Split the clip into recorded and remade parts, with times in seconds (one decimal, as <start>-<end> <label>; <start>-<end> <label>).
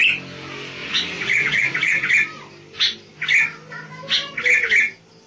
0.0-0.8 recorded; 0.8-2.1 remade; 2.1-5.3 recorded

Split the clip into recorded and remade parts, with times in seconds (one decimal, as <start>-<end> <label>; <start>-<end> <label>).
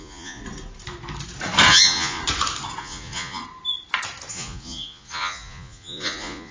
0.0-0.4 remade; 0.4-1.7 recorded; 1.7-2.2 remade; 2.2-2.8 recorded; 2.8-3.4 remade; 3.4-4.3 recorded; 4.3-6.5 remade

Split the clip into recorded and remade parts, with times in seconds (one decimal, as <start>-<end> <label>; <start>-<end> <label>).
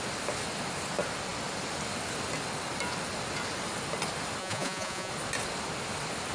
0.0-4.4 recorded; 4.4-5.1 remade; 5.1-6.3 recorded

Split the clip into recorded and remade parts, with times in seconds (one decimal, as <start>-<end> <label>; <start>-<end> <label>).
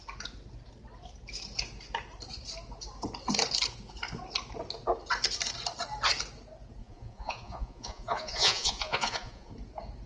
0.0-6.8 recorded; 6.8-9.5 remade; 9.5-10.1 recorded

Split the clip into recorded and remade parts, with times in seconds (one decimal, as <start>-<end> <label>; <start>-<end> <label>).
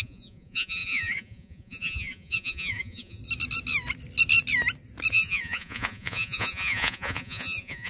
0.0-3.2 remade; 3.2-5.1 recorded; 5.1-7.9 remade